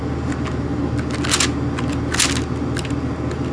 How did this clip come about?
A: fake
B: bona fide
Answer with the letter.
B